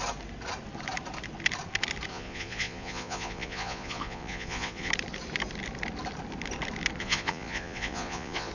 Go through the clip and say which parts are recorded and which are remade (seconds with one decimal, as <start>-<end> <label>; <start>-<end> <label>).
0.0-2.1 recorded; 2.1-4.9 remade; 4.9-7.0 recorded; 7.0-8.5 remade

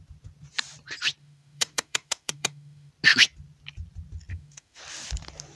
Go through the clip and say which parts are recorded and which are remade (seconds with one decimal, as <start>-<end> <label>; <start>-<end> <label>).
0.0-1.2 recorded; 1.2-2.9 remade; 2.9-4.3 recorded; 4.3-4.8 remade; 4.8-5.6 recorded